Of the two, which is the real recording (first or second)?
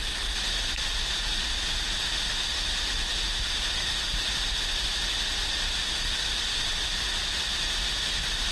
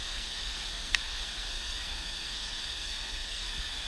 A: first